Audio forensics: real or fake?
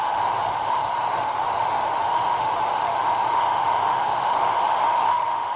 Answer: fake